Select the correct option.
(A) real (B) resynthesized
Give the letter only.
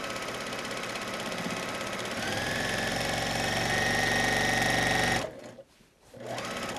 A